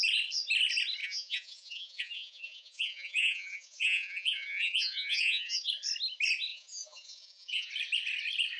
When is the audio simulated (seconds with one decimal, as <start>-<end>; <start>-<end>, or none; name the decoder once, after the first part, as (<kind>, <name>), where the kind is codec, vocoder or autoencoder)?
1.0-5.7 (vocoder, Vocos); 6.5-7.7

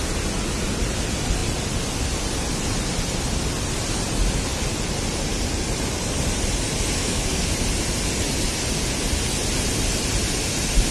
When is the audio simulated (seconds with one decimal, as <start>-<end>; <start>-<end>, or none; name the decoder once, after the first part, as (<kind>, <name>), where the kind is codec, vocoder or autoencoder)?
7.0-7.5 (codec, SNAC)

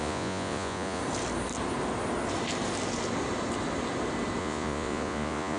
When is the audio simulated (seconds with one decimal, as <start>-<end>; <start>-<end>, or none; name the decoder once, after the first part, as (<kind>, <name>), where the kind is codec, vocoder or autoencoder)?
0.0-1.0 (vocoder, Vocos); 4.4-5.6

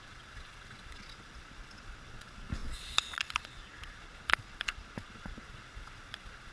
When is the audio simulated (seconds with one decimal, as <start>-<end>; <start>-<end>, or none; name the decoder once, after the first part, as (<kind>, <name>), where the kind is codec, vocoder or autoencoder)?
0.0-6.5 (vocoder, Vocos)

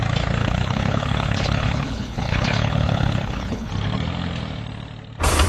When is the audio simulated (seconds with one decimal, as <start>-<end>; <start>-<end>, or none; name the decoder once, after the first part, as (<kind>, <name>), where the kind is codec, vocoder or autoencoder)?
0.4-3.7 (codec, HILCodec)

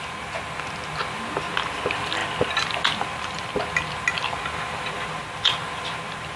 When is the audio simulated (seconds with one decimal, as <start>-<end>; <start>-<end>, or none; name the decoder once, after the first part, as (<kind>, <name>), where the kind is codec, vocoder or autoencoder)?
none

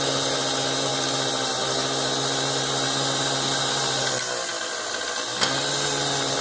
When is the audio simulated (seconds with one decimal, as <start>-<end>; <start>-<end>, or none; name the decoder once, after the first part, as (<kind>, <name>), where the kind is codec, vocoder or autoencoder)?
none

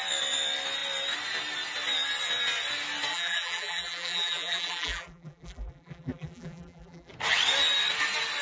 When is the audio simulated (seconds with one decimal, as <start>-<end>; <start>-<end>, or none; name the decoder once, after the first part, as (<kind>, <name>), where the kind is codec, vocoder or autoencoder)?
3.1-7.1 (vocoder, BigVGAN v2)